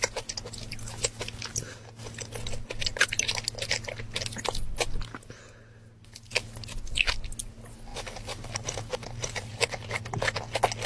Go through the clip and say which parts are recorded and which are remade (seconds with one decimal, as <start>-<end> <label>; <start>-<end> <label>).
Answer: 0.0-7.9 recorded; 7.9-10.1 remade; 10.1-10.9 recorded